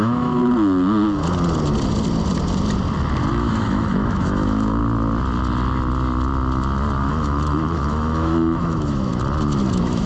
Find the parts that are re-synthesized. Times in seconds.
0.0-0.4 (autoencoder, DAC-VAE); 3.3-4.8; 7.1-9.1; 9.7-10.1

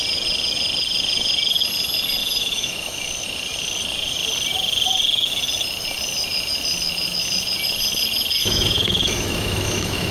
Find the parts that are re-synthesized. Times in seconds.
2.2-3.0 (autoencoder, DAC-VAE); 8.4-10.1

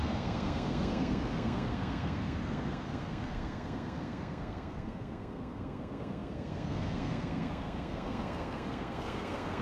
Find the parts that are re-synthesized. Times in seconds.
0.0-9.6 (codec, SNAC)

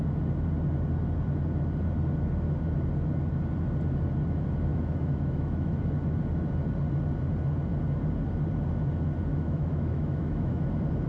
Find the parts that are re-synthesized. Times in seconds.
4.7-5.8 (autoencoder, DAC-VAE); 9.3-10.7

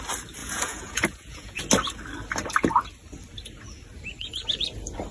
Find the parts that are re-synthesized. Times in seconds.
0.4-1.6 (vocoder, Vocos)

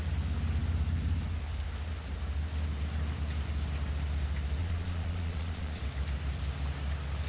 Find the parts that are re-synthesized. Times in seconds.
4.6-5.8 (vocoder, Vocos)

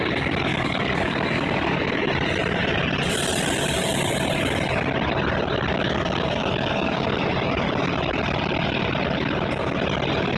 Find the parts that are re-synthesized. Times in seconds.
0.5-2.1 (codec, DAC); 5.7-7.2

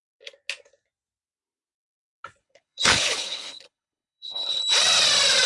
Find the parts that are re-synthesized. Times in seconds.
2.4-4.6 (codec, HILCodec)